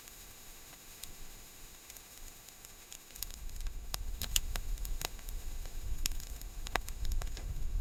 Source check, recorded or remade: remade